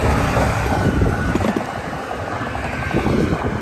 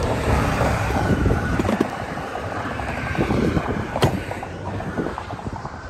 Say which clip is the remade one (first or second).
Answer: second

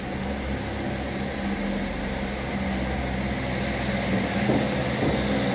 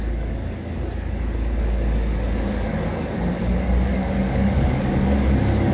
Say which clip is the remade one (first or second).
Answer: second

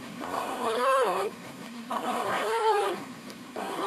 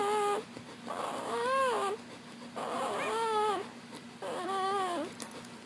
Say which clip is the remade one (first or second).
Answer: first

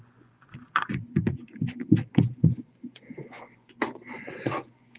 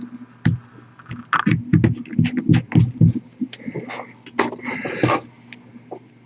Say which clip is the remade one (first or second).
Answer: first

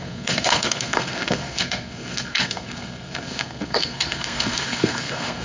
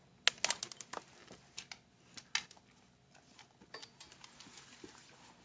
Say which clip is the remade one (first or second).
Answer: first